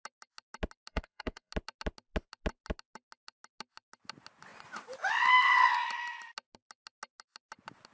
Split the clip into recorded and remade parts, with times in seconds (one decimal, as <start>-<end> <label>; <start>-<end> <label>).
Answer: 0.0-0.9 recorded; 0.9-1.5 remade; 1.5-7.9 recorded